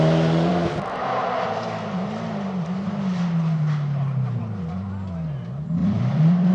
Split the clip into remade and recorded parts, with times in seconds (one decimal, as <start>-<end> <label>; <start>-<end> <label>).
0.0-5.8 recorded; 5.8-6.5 remade